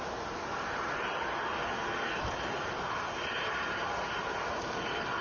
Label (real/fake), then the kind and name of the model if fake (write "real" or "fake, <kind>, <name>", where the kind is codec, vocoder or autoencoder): real